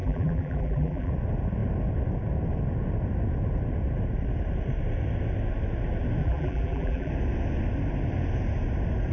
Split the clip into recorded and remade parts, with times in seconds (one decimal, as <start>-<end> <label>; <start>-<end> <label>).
0.0-1.1 remade; 1.1-6.2 recorded; 6.2-7.1 remade; 7.1-9.1 recorded